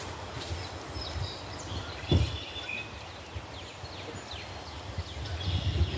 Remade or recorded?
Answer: recorded